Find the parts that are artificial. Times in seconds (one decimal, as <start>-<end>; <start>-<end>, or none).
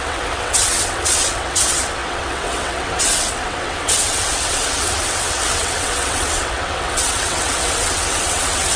0.0-8.8